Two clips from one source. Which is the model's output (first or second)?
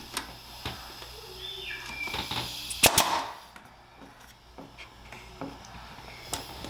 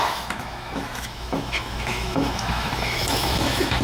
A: second